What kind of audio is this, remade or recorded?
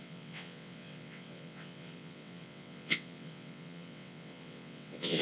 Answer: remade